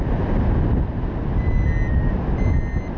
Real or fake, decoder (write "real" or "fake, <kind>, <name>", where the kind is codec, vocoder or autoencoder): real